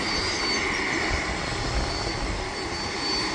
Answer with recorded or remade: recorded